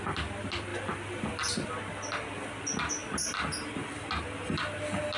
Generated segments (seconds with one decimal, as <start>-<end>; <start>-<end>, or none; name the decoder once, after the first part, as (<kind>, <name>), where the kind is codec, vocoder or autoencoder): 0.7-1.7 (vocoder, BigVGAN v2)